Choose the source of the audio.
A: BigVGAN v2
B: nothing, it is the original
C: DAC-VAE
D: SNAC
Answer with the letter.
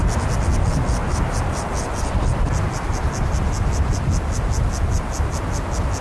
B